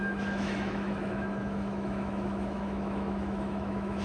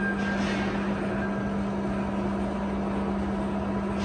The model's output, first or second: first